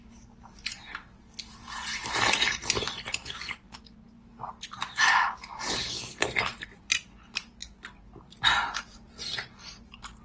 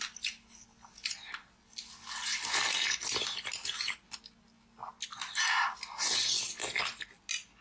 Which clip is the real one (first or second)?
second